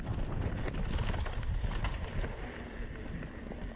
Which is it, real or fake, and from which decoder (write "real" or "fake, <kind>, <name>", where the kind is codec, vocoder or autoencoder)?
real